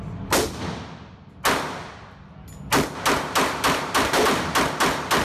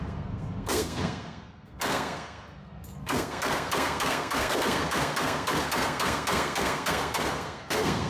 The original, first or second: first